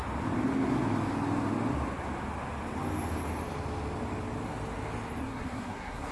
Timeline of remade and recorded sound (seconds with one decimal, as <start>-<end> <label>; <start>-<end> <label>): 0.0-5.2 recorded; 5.2-6.1 remade